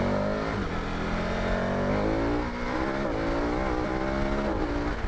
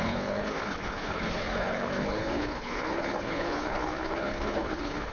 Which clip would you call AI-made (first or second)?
second